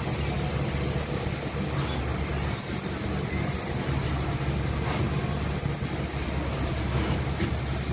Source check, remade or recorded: recorded